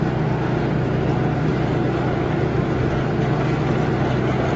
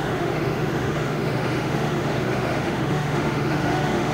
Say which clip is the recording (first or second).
first